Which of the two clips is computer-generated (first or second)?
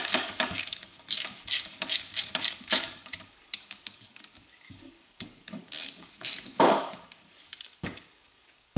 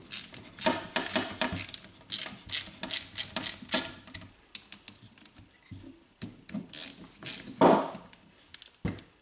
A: first